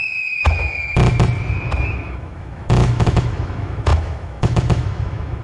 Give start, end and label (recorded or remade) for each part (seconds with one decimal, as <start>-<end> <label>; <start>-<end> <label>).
0.0-1.0 remade; 1.0-1.8 recorded; 1.8-5.4 remade